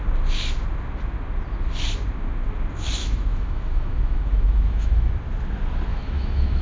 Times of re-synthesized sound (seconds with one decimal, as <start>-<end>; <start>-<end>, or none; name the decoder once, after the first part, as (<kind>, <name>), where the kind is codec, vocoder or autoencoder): 3.0-5.1 (autoencoder, DAC-VAE); 5.9-6.6